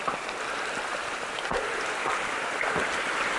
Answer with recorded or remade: recorded